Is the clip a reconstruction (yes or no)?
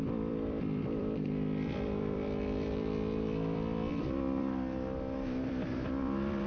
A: yes